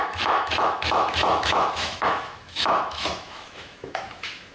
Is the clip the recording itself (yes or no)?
no